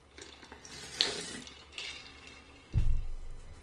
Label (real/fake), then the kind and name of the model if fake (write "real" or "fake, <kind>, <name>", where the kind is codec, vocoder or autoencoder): real